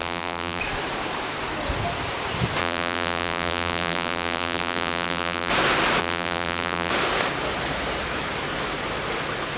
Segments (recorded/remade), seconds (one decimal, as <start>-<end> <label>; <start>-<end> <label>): 0.0-0.6 remade; 0.6-2.6 recorded; 2.6-5.5 remade; 5.5-6.0 recorded; 6.0-6.9 remade; 6.9-9.6 recorded